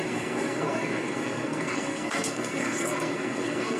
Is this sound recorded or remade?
remade